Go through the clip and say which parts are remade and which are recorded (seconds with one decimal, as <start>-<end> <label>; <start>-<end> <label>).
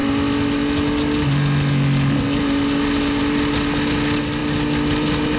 0.0-5.4 recorded